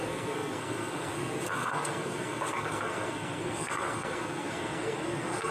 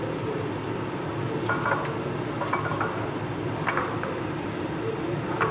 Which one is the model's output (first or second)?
first